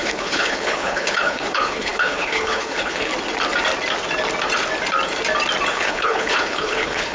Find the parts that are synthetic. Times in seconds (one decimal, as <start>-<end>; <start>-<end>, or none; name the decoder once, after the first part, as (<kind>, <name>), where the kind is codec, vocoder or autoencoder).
0.0-3.1 (codec, HILCodec); 5.7-7.1